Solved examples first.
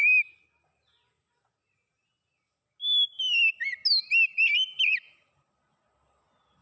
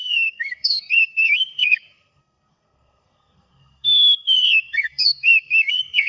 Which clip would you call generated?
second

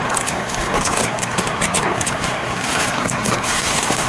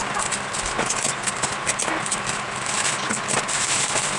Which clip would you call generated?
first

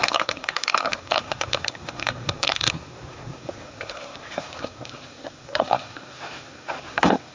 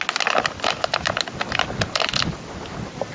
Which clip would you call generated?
first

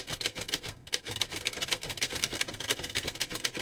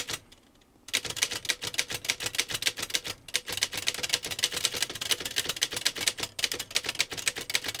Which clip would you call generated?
first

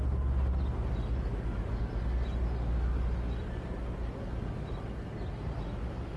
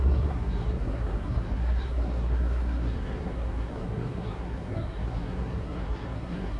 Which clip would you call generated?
second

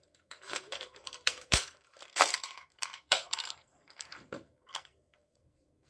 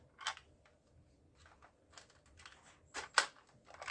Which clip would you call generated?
first